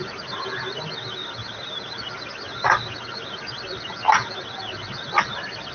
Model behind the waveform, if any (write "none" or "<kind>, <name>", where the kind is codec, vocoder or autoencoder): none